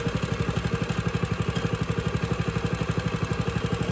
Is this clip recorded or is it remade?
recorded